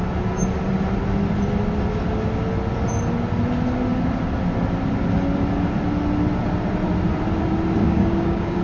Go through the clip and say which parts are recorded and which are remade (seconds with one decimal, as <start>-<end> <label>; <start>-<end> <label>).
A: 0.0-7.8 recorded; 7.8-8.6 remade